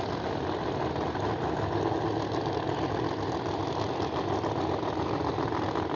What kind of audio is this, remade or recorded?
recorded